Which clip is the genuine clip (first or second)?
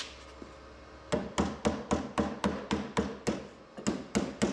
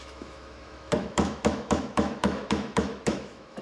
first